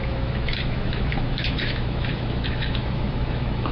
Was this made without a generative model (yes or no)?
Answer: no